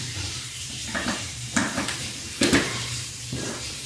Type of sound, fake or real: fake